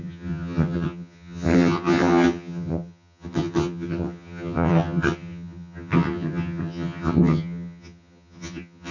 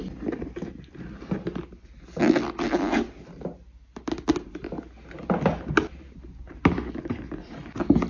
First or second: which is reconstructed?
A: first